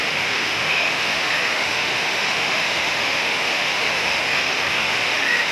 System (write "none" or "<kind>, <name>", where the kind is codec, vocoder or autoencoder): autoencoder, DAC-VAE